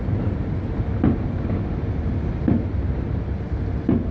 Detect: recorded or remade recorded